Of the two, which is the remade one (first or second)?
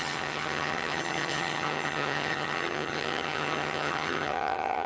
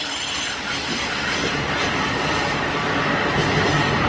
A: first